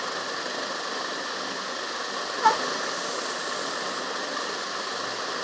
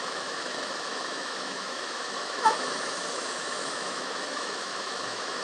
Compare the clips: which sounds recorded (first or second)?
first